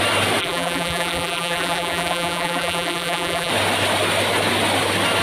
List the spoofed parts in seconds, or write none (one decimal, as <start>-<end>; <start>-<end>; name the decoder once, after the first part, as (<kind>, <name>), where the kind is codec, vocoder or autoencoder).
0.4-3.5 (vocoder, BigVGAN v2)